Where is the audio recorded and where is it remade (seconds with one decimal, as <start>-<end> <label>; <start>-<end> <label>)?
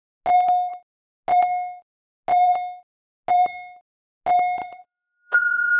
0.0-4.6 recorded; 4.6-5.8 remade